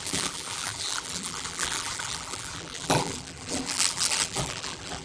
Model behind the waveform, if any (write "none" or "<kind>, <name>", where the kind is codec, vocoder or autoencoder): vocoder, BigVGAN v2